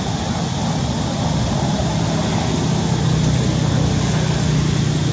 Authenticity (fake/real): real